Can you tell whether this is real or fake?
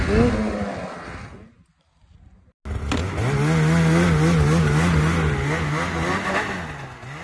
real